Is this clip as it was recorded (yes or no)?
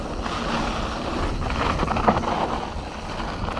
yes